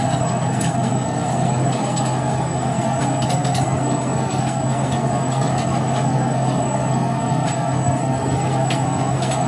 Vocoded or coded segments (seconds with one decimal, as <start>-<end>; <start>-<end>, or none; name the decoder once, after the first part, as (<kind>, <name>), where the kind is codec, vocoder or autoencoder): 0.0-9.5 (codec, SNAC)